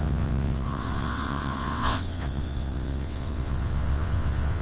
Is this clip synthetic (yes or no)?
yes